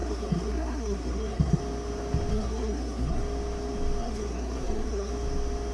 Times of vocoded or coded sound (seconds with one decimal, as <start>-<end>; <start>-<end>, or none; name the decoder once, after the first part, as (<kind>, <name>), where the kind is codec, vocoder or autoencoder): 0.0-1.6 (codec, SNAC); 2.3-3.2; 4.0-5.1